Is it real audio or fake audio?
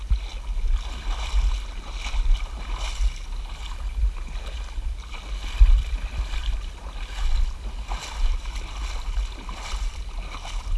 real